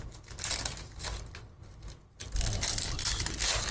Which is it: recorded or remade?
recorded